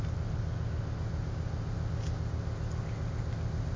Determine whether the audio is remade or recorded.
recorded